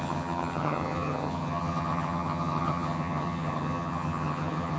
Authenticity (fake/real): fake